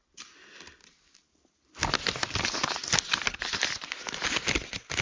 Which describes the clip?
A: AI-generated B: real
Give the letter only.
B